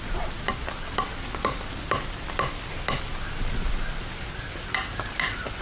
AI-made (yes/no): no